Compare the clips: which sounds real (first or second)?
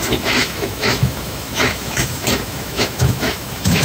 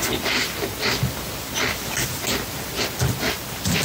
second